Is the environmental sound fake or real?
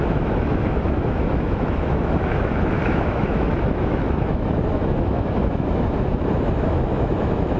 fake